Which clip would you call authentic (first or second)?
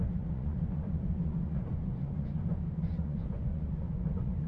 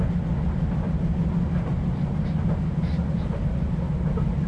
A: second